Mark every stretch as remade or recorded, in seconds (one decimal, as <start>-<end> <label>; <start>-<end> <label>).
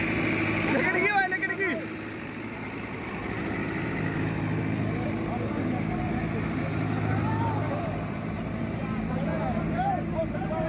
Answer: 0.0-10.7 recorded